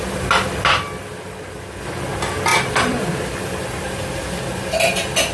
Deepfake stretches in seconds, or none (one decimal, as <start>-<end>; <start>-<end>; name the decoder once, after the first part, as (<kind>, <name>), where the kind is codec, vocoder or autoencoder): 2.5-4.2 (vocoder, BigVGAN v2)